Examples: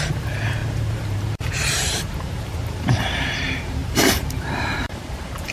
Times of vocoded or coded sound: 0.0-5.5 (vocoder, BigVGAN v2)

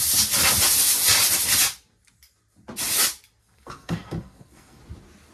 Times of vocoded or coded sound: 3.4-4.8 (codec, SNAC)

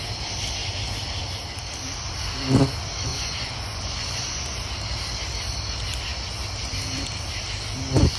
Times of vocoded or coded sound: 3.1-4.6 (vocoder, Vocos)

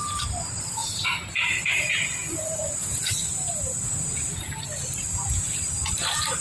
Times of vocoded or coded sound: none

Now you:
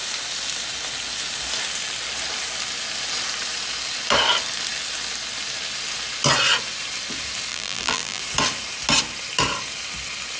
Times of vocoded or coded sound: 7.5-8.2 (vocoder, BigVGAN v2)

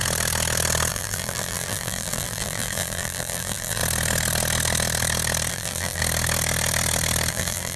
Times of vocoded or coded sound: 0.9-3.8 (vocoder, BigVGAN v2); 5.5-6.0; 7.3-7.8